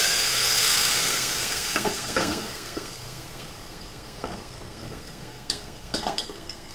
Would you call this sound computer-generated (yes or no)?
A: yes